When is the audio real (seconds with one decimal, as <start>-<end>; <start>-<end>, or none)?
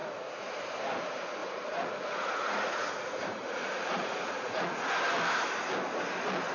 0.6-1.4; 4.9-6.5